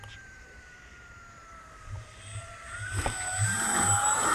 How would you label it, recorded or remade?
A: remade